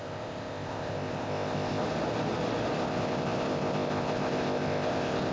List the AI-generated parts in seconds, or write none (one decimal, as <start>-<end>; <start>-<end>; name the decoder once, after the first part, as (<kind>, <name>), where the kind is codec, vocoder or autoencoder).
0.0-1.8 (codec, ZipCodec); 2.8-5.3